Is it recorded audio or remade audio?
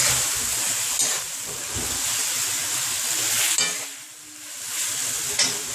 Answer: recorded